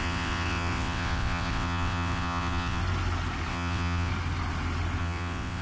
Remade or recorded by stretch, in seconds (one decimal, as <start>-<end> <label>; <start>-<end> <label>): 0.0-2.8 remade; 2.8-3.5 recorded; 3.5-4.1 remade; 4.1-5.0 recorded; 5.0-5.6 remade